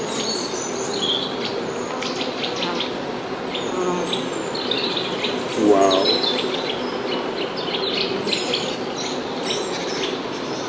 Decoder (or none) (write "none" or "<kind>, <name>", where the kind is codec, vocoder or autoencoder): none